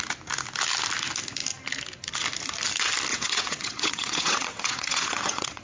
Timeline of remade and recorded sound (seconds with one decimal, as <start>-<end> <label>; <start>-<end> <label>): 0.0-3.1 recorded; 3.1-5.6 remade